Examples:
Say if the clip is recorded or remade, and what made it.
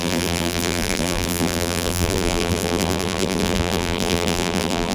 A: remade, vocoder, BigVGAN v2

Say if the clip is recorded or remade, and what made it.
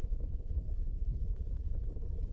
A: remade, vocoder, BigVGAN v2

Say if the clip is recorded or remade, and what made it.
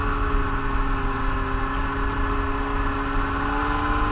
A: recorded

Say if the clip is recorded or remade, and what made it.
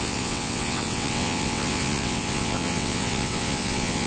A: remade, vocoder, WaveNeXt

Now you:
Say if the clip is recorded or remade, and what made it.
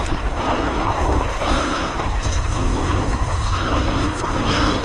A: remade, codec, SNAC